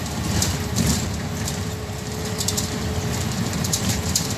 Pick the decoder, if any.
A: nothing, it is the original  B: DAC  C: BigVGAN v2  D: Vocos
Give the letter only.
C